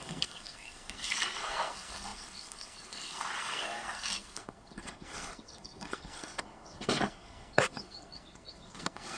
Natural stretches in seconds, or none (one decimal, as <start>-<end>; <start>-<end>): none